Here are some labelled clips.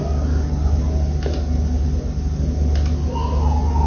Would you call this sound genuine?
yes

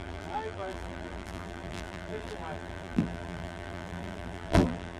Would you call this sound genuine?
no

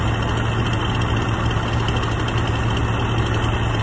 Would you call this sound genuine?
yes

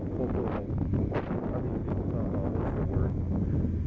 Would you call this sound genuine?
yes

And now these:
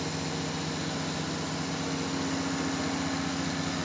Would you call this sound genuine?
yes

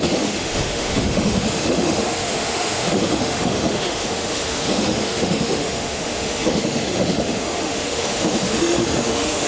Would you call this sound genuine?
no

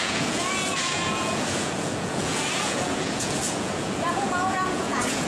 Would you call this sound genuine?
no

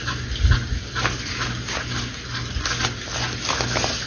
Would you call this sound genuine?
yes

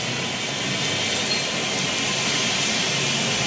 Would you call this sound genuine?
yes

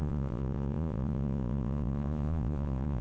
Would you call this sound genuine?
no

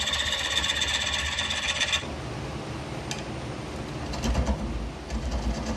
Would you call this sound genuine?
yes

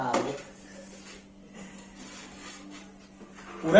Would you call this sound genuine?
yes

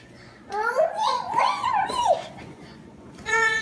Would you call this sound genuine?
no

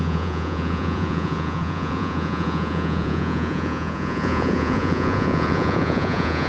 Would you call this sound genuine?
no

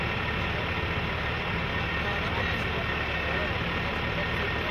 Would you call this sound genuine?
yes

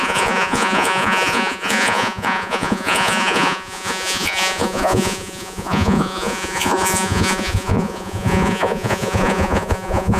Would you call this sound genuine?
no